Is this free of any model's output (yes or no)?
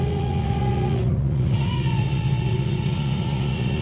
no